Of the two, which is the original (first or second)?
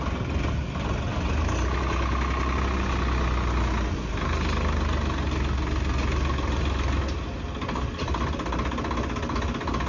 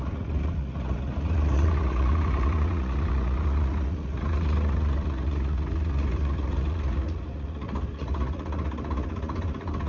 first